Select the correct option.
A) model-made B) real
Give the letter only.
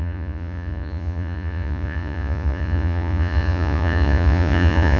A